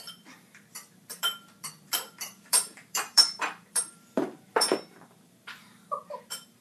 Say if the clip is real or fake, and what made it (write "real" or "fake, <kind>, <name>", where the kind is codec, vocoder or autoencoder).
fake, vocoder, BigVGAN v2